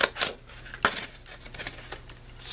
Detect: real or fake real